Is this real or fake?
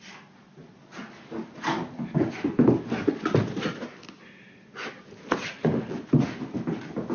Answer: real